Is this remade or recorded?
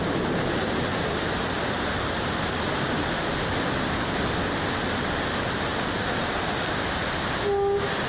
recorded